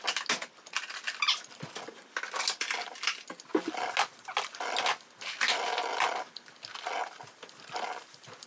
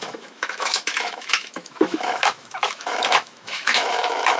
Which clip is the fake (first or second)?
second